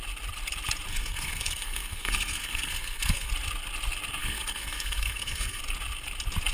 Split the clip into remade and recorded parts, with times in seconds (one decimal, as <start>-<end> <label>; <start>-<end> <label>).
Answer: 0.0-0.9 recorded; 0.9-3.3 remade; 3.3-4.2 recorded; 4.2-5.6 remade; 5.6-6.5 recorded